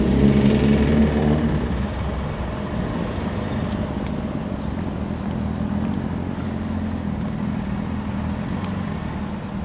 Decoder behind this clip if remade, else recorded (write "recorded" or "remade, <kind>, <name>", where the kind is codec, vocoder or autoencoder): recorded